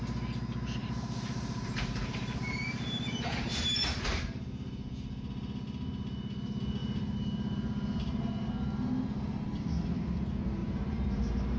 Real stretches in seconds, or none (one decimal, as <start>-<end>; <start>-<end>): 0.0-0.8; 4.4-6.8; 8.2-10.6